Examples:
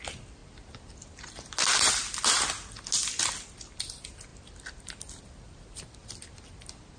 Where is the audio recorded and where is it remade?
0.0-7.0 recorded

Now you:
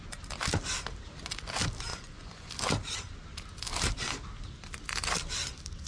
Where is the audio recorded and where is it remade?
0.0-1.9 recorded; 1.9-2.5 remade; 2.5-5.9 recorded

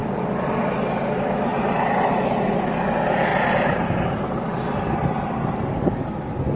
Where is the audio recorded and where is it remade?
0.0-3.3 recorded; 3.3-5.4 remade; 5.4-6.6 recorded